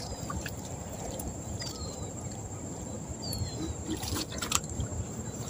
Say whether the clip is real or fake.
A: fake